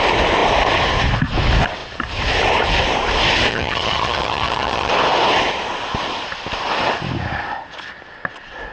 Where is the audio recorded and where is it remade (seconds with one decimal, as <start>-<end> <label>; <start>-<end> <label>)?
0.0-3.5 recorded; 3.5-4.9 remade; 4.9-8.7 recorded